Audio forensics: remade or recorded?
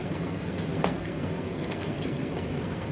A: remade